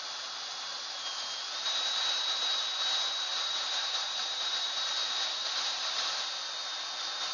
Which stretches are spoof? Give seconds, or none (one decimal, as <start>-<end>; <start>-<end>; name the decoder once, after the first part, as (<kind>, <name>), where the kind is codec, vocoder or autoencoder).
3.3-4.9 (vocoder, BigVGAN v2); 5.4-6.2